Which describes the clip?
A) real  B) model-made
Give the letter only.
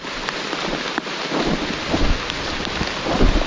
A